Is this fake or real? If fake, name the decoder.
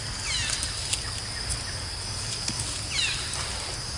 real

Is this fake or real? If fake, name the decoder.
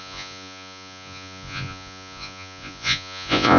fake, vocoder, Vocos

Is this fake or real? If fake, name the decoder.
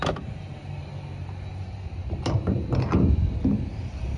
real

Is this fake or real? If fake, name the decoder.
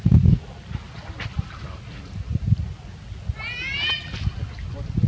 real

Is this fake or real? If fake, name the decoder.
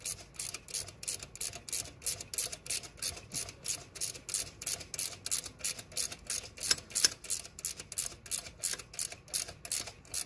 real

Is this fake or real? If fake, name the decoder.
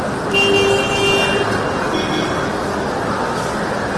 real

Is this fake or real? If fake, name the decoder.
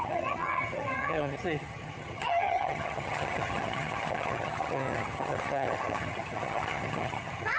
fake, vocoder, HiFi-GAN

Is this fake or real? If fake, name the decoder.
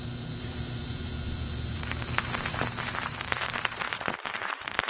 fake, vocoder, BigVGAN v2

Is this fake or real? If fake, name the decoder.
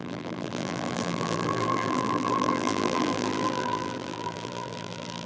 fake, vocoder, BigVGAN v2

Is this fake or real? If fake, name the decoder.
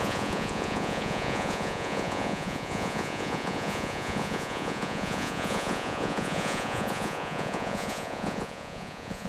fake, vocoder, Vocos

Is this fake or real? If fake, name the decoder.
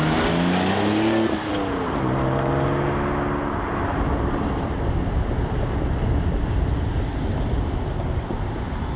real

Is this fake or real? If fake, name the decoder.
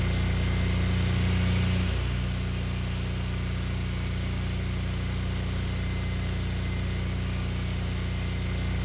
real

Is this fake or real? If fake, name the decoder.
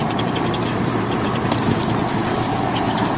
real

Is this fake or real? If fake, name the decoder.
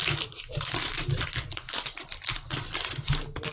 real